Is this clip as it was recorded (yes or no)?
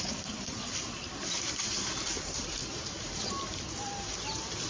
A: no